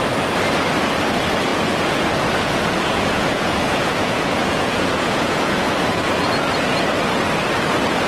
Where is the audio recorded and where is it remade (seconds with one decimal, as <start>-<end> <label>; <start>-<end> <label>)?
0.0-1.5 recorded; 1.5-6.3 remade; 6.3-8.1 recorded